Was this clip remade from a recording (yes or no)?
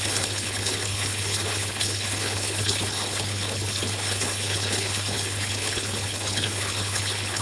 yes